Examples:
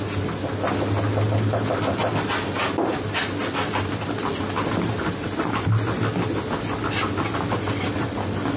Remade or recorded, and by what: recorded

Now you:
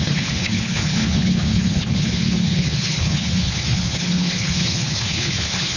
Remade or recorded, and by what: remade, codec, HILCodec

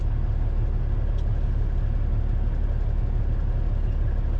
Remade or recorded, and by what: recorded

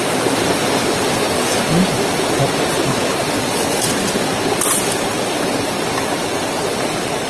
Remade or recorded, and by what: recorded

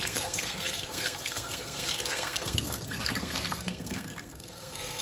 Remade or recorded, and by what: remade, codec, SNAC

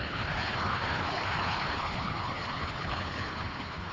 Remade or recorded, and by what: remade, codec, HILCodec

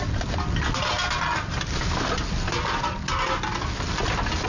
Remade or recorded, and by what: recorded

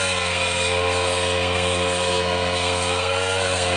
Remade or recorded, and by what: remade, codec, SNAC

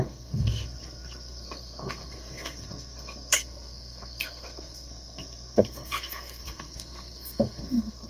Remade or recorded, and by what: remade, codec, SNAC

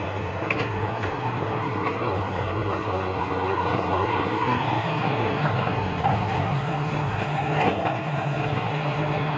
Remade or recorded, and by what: remade, codec, SNAC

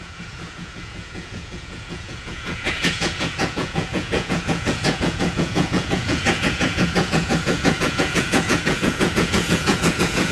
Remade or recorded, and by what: remade, vocoder, Vocos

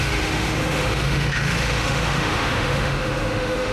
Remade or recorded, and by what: remade, autoencoder, DAC-VAE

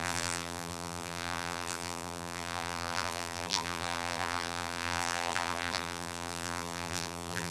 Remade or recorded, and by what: remade, vocoder, BigVGAN v2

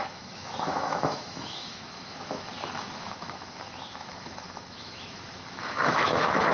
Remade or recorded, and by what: remade, autoencoder, DAC-VAE